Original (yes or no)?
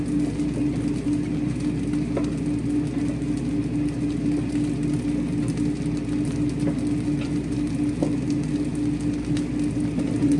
yes